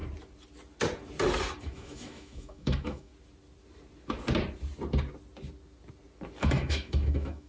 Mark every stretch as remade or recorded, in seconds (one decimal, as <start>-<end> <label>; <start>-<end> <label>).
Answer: 0.0-1.6 recorded; 1.6-3.1 remade; 3.1-6.4 recorded; 6.4-7.5 remade